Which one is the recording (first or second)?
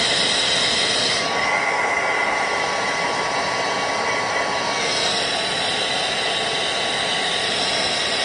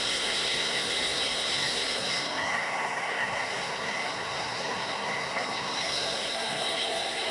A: first